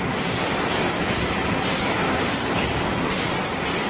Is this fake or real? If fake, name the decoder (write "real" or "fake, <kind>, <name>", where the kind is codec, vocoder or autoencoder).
real